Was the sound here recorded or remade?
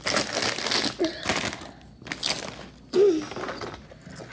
recorded